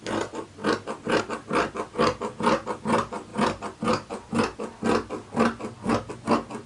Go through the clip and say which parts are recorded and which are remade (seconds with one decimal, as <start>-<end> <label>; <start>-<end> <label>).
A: 0.0-6.7 recorded